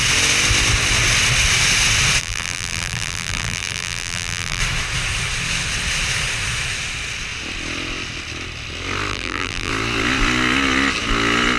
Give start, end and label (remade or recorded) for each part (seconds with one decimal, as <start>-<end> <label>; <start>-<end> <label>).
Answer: 0.0-2.2 recorded; 2.2-4.6 remade; 4.6-9.1 recorded; 9.1-9.7 remade; 9.7-11.6 recorded